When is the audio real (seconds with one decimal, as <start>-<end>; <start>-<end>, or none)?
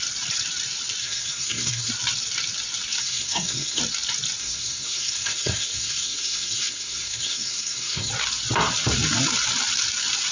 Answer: 0.0-1.0; 1.9-3.0; 3.8-4.4; 8.1-10.3